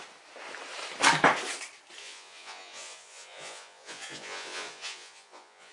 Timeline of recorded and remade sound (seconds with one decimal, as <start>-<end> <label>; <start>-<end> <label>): 0.0-2.0 recorded; 2.0-5.7 remade